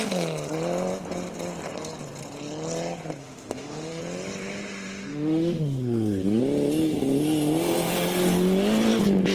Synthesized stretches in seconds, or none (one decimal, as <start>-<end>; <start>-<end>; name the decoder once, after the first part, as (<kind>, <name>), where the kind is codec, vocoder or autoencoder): 3.2-4.0 (autoencoder, DAC-VAE); 5.1-6.4